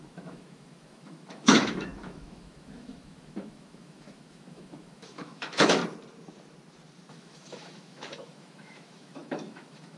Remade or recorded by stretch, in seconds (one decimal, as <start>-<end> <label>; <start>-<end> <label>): 0.0-5.8 remade; 5.8-7.1 recorded; 7.1-10.0 remade